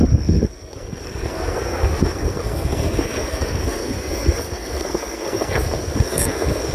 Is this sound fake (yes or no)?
yes